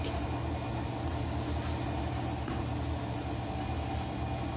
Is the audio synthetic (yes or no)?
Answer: no